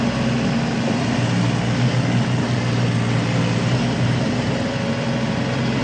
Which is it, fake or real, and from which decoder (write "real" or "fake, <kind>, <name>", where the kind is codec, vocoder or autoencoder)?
real